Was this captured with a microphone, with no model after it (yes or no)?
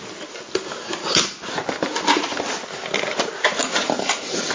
yes